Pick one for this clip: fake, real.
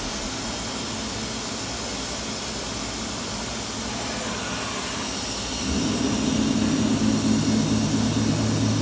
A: real